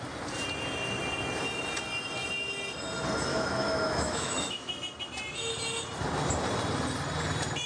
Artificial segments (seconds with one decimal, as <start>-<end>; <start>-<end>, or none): 3.3-4.7